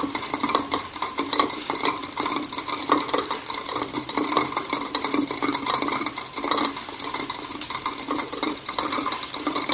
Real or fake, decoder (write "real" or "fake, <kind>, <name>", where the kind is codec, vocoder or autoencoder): real